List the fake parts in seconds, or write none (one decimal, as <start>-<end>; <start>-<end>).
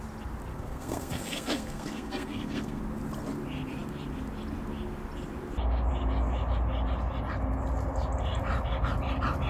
0.5-2.8